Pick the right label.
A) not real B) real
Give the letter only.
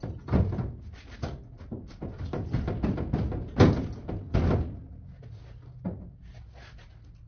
B